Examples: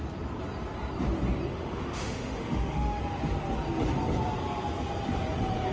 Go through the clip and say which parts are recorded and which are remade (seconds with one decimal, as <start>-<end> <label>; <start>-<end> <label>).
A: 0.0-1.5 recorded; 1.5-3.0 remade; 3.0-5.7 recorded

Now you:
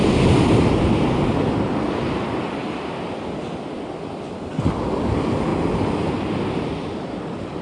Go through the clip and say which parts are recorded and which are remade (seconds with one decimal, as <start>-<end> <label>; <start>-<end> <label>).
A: 0.0-7.6 recorded

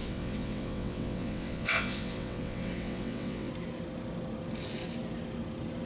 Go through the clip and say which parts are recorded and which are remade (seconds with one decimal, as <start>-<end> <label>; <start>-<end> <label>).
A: 0.0-3.5 remade; 3.5-5.9 recorded

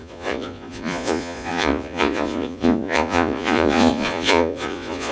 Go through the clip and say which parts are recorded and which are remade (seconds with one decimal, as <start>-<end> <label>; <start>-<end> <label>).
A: 0.0-5.1 remade

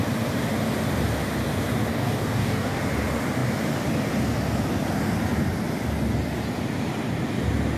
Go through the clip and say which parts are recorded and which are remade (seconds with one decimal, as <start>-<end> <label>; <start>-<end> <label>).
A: 0.0-1.9 recorded; 1.9-2.8 remade; 2.8-7.8 recorded